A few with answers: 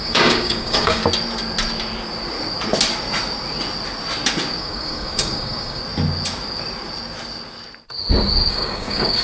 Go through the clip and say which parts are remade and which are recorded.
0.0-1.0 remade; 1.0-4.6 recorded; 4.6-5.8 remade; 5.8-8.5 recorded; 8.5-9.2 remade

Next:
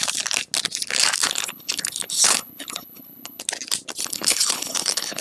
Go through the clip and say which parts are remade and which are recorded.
0.0-1.2 recorded; 1.2-3.4 remade; 3.4-4.0 recorded; 4.0-5.2 remade